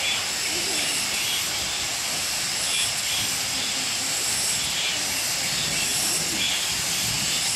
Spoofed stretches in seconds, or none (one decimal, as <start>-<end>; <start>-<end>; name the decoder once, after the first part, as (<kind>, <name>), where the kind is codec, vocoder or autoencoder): 1.9-5.1 (vocoder, BigVGAN v2); 5.9-6.7